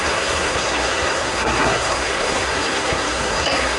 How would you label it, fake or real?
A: fake